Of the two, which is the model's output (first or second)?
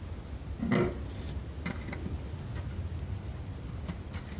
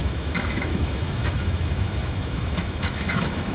second